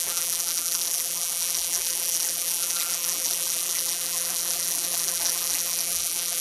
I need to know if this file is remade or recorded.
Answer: remade